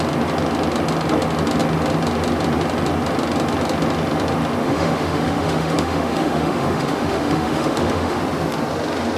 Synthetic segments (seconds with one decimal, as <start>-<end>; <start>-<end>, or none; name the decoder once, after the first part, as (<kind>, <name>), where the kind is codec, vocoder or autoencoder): 4.6-8.2 (autoencoder, DAC-VAE)